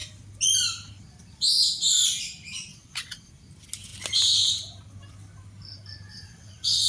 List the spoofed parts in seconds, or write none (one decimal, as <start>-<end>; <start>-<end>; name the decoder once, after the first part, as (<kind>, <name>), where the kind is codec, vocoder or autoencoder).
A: 2.7-3.3 (vocoder, WaveNeXt); 6.1-6.9